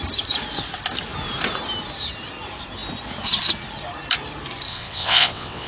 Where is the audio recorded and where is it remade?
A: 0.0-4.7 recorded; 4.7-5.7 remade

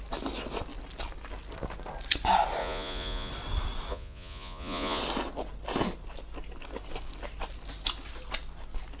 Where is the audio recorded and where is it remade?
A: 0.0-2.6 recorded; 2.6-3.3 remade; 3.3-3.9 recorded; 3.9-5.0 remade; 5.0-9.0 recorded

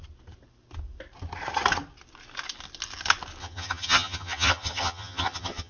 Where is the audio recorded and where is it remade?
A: 0.0-3.4 recorded; 3.4-5.7 remade

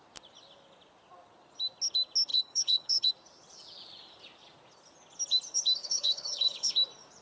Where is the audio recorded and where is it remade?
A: 0.0-2.3 recorded; 2.3-3.1 remade; 3.1-5.8 recorded; 5.8-6.7 remade; 6.7-7.2 recorded

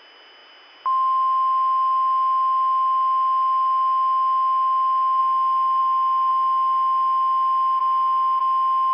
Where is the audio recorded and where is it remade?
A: 0.0-8.9 recorded

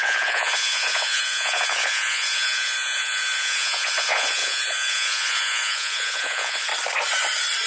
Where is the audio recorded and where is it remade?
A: 0.0-6.7 remade; 6.7-7.7 recorded

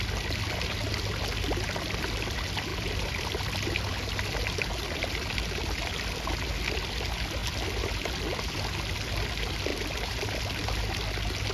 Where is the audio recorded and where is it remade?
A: 0.0-2.7 recorded; 2.7-3.9 remade; 3.9-9.7 recorded; 9.7-10.4 remade; 10.4-11.5 recorded

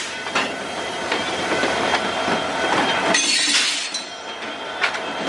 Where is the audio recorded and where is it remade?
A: 0.0-1.9 remade; 1.9-5.3 recorded